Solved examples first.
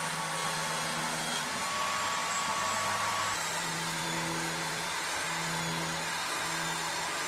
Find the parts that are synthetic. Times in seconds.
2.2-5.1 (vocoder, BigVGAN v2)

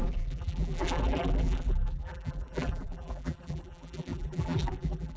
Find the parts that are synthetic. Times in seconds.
0.0-5.2 (vocoder, BigVGAN v2)

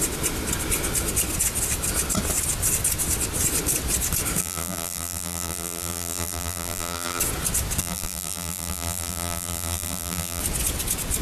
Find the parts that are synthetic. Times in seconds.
4.4-7.2 (vocoder, BigVGAN v2); 7.8-10.4

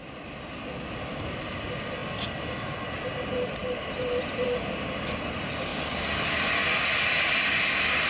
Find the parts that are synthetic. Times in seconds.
5.7-7.6 (vocoder, BigVGAN v2)

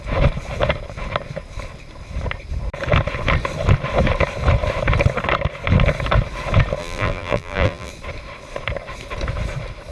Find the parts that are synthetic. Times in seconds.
6.8-7.9 (vocoder, BigVGAN v2)

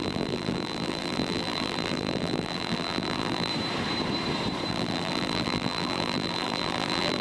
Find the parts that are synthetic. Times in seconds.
0.0-3.5 (vocoder, BigVGAN v2); 4.7-7.2

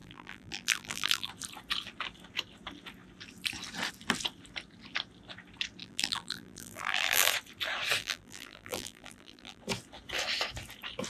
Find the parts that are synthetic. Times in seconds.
0.0-1.3 (vocoder, BigVGAN v2); 5.8-7.3; 8.0-9.6